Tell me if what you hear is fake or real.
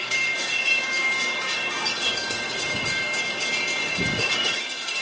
fake